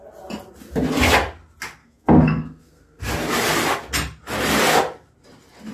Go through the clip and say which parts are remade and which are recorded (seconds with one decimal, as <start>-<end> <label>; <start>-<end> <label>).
0.0-1.8 recorded; 1.8-3.0 remade; 3.0-5.7 recorded

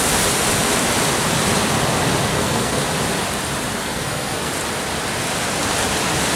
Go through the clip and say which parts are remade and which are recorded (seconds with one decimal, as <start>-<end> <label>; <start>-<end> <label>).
0.0-2.3 recorded; 2.3-2.8 remade; 2.8-3.8 recorded; 3.8-4.5 remade; 4.5-6.4 recorded

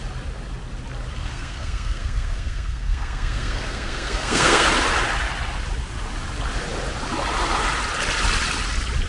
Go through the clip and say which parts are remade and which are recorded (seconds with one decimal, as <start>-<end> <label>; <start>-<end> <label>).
0.0-1.2 recorded; 1.2-4.7 remade; 4.7-9.1 recorded